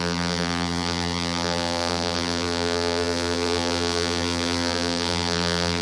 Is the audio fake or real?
fake